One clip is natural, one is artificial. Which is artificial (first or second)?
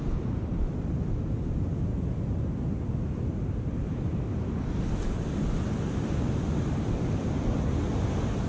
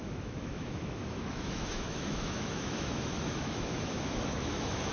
second